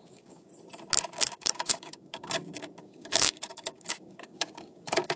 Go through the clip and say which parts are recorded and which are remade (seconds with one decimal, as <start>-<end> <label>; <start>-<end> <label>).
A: 0.0-0.5 remade; 0.5-1.1 recorded; 1.1-5.2 remade